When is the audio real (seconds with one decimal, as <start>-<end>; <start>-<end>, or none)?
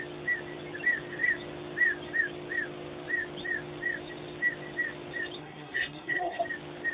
0.0-5.4; 6.4-6.9